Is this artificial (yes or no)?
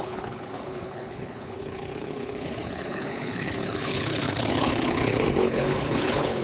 yes